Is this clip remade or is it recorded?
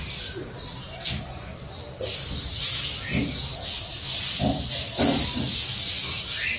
recorded